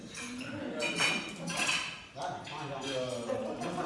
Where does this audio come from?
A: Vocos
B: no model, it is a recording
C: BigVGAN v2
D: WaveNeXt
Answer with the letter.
B